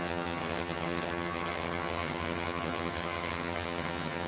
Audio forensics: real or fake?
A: fake